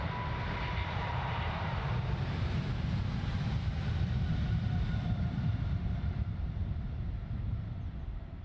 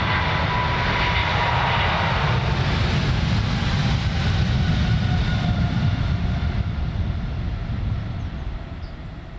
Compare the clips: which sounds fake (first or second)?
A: first